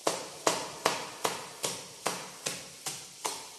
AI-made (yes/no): no